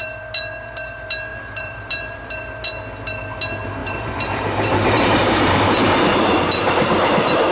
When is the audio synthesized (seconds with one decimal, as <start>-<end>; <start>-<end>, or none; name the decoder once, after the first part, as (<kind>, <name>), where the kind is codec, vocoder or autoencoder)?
1.3-2.3 (vocoder, BigVGAN v2); 3.8-7.5